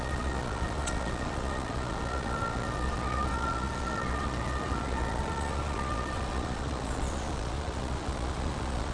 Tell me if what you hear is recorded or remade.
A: remade